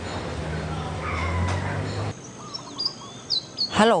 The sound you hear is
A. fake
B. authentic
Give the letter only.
B